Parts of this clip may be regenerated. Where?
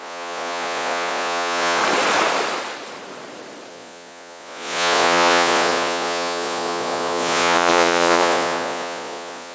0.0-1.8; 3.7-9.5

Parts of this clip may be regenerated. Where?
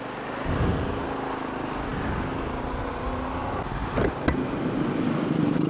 none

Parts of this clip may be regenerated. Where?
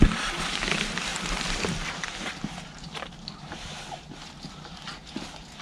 none